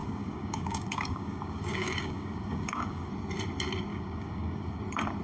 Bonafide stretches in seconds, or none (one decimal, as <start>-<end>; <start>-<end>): 3.1-3.9; 4.8-5.2